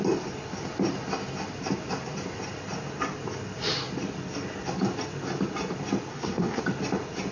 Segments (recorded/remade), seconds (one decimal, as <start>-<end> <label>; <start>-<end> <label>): 0.0-6.1 recorded; 6.1-6.6 remade; 6.6-7.3 recorded